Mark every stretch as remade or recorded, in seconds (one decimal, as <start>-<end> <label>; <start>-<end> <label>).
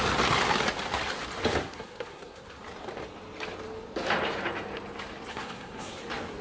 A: 0.0-1.6 recorded; 1.6-2.6 remade; 2.6-5.3 recorded; 5.3-6.0 remade; 6.0-6.4 recorded